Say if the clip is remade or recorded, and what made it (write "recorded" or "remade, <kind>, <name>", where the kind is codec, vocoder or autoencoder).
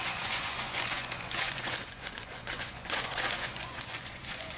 remade, vocoder, Vocos